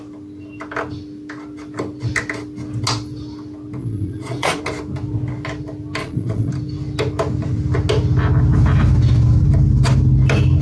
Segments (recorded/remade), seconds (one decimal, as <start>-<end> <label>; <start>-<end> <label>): 0.0-3.8 recorded; 3.8-4.6 remade; 4.6-6.0 recorded; 6.0-6.5 remade; 6.5-10.6 recorded